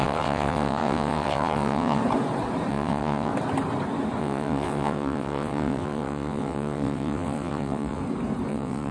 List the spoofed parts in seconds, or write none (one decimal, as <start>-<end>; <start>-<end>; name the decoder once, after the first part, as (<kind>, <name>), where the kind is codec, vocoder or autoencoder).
0.0-2.0 (vocoder, WaveNeXt); 2.7-3.3; 4.2-8.0; 8.5-8.9